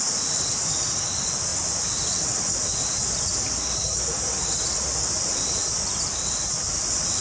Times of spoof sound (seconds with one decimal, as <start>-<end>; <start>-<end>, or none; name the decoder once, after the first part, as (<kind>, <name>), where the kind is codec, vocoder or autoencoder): none